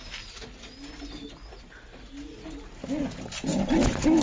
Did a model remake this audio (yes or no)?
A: no